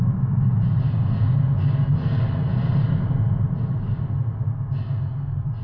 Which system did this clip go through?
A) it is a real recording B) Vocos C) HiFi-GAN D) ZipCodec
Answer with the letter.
A